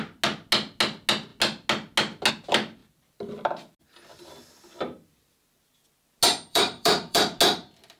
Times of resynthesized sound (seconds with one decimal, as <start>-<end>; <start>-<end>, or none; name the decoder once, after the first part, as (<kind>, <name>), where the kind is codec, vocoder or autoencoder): 2.8-3.8 (vocoder, BigVGAN v2); 6.5-7.2